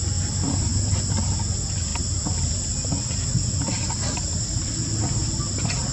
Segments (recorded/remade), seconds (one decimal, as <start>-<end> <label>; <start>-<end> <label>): 0.0-5.9 recorded